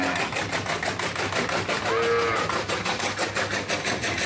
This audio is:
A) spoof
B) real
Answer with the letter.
B